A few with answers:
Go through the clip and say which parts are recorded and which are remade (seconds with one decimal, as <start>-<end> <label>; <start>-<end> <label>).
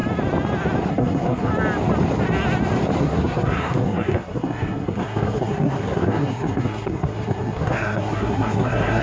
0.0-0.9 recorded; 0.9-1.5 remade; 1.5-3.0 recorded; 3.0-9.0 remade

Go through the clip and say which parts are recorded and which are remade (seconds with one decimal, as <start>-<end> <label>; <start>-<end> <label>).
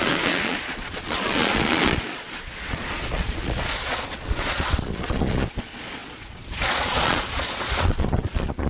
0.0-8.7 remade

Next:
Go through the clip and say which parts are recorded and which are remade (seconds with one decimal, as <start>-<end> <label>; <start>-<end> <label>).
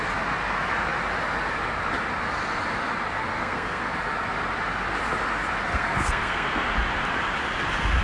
0.0-3.3 recorded; 3.3-3.8 remade; 3.8-5.7 recorded; 5.7-6.7 remade; 6.7-8.0 recorded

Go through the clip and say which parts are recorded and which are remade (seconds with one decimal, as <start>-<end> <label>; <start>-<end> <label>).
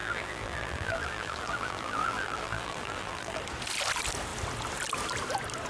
0.0-3.4 remade; 3.4-5.7 recorded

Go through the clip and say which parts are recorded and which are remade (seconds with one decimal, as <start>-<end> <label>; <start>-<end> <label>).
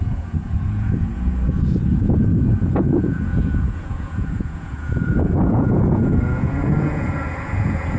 0.0-8.0 remade